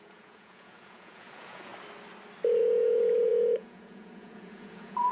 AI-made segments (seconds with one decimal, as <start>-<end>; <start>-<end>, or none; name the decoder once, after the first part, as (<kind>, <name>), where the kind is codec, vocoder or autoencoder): 0.0-1.7 (vocoder, Vocos); 2.6-5.1